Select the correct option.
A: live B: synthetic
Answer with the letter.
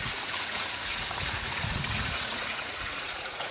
B